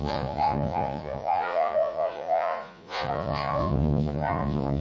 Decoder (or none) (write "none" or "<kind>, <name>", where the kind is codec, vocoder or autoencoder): vocoder, Vocos